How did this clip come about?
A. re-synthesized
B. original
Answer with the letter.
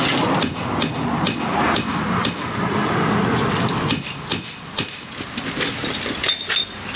B